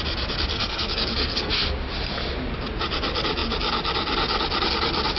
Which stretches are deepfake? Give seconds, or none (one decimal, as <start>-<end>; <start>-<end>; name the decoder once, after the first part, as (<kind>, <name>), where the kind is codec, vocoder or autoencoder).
0.5-1.5 (codec, SNAC)